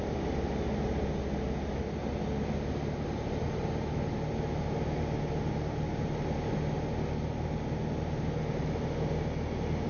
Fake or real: real